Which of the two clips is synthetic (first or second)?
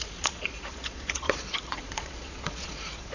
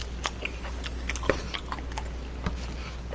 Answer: first